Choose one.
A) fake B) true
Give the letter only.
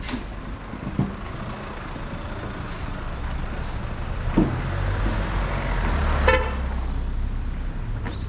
B